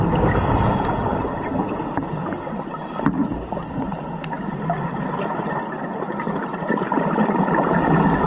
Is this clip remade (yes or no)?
no